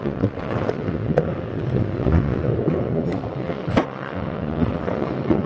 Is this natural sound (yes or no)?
no